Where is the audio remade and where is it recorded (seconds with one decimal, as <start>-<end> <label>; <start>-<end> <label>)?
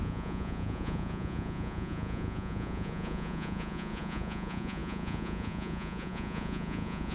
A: 0.0-7.1 remade